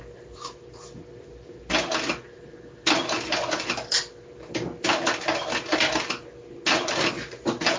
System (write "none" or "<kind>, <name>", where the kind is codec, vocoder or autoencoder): none